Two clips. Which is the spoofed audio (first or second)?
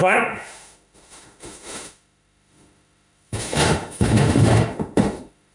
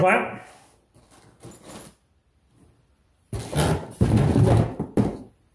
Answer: first